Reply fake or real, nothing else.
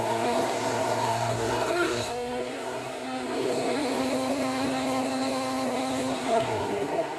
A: fake